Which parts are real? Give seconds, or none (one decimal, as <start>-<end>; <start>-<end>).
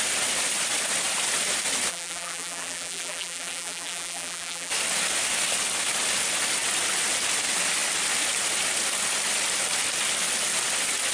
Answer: 0.0-1.9; 4.7-11.1